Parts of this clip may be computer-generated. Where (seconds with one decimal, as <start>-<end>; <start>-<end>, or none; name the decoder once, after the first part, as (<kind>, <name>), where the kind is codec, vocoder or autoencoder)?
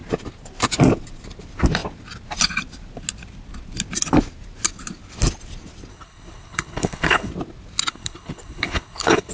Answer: 5.9-7.3 (codec, HILCodec); 7.9-9.3